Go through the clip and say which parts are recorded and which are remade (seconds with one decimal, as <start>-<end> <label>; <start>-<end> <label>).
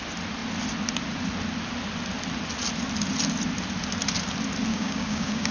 0.0-4.7 recorded; 4.7-5.5 remade